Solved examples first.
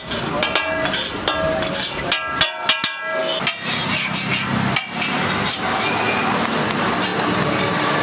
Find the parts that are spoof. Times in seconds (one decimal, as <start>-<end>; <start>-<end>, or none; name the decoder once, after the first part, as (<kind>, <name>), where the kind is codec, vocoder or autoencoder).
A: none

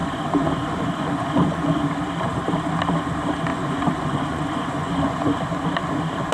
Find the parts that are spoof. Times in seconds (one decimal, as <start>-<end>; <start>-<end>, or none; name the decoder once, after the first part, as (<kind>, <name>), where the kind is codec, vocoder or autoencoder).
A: 0.0-1.8 (vocoder, Vocos); 3.5-5.4

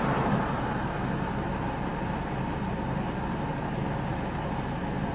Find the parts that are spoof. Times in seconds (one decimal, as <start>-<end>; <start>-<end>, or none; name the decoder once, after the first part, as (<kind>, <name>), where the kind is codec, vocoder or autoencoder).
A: none